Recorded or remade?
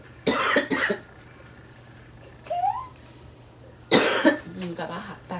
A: remade